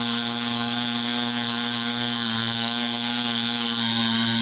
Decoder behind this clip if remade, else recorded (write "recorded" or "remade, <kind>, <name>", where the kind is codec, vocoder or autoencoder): remade, codec, SNAC